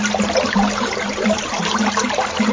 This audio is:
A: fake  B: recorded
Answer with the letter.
B